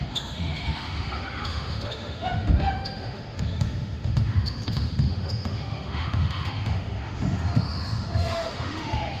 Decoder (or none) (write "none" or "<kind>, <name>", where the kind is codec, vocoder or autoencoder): autoencoder, DAC-VAE